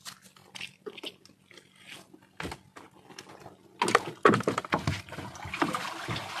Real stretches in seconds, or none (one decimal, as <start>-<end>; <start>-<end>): 0.0-6.4